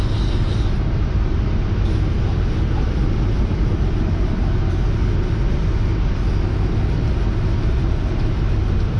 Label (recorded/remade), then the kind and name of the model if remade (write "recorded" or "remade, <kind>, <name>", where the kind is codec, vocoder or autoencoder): recorded